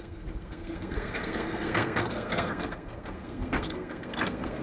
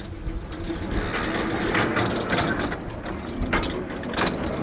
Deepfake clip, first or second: first